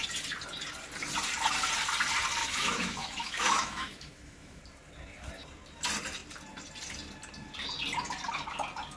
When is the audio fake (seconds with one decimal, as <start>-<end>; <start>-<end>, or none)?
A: 2.4-4.6